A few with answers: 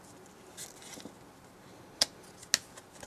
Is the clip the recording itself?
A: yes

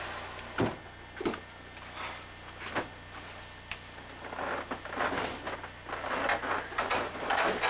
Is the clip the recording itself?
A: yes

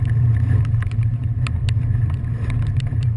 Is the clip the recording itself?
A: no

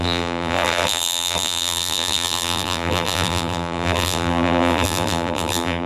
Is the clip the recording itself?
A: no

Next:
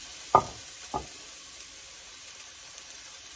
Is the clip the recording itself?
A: yes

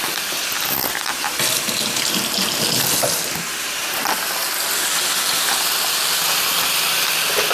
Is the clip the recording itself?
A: yes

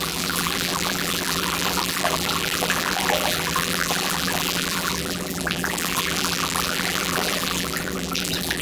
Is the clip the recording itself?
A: no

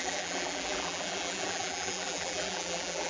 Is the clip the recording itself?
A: no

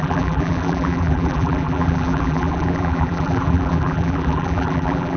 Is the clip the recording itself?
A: no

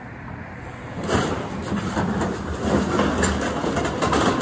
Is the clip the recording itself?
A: yes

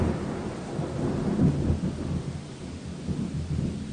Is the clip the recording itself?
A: yes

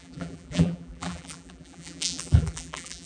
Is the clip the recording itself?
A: no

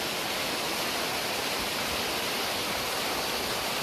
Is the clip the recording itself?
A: no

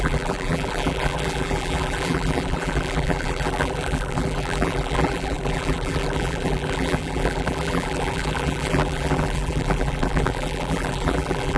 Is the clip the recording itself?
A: no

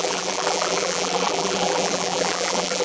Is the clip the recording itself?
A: no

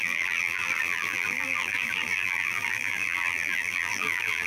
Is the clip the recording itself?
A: no